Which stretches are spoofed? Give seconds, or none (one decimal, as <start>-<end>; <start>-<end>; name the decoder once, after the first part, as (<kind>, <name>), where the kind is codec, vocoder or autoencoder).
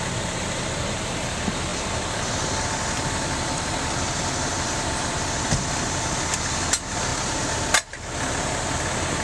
1.7-5.8 (vocoder, BigVGAN v2)